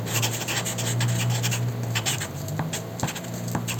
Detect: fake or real real